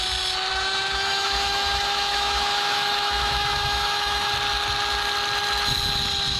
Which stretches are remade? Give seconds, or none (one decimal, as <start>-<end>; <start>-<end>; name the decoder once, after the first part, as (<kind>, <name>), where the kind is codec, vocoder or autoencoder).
0.5-4.3 (autoencoder, DAC-VAE)